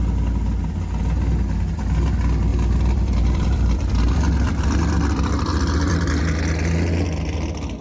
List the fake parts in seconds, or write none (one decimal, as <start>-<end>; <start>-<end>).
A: 2.5-6.2